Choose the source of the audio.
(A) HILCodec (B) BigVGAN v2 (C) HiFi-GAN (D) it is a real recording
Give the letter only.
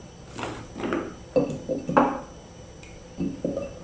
D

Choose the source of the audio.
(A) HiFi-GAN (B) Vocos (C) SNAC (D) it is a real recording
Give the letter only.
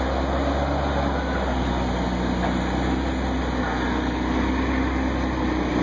D